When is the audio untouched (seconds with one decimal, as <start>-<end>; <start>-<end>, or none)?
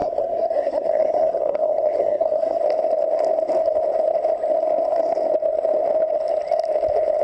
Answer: 2.6-7.2